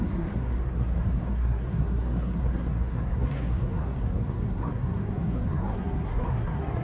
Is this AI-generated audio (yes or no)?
yes